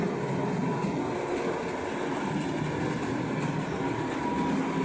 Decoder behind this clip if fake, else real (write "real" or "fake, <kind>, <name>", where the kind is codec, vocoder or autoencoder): real